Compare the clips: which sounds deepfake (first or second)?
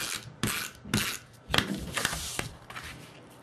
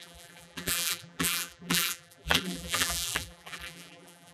second